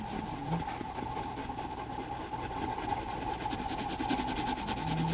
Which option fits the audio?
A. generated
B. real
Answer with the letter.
B